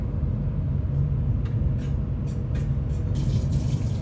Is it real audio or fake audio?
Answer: real